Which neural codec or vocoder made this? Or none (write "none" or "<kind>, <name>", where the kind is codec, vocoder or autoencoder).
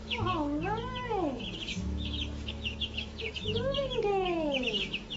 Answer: autoencoder, DAC-VAE